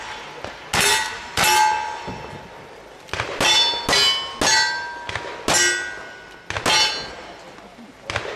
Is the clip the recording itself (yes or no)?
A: yes